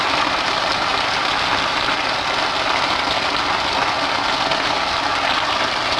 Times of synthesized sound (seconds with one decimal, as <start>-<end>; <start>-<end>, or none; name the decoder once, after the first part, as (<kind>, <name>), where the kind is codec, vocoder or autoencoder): none